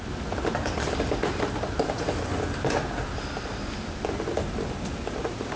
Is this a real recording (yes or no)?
yes